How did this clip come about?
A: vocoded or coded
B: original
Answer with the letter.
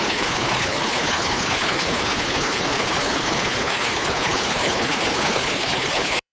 A